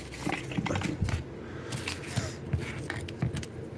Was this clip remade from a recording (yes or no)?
no